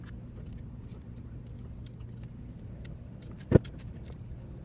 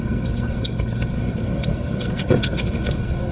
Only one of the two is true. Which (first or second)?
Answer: first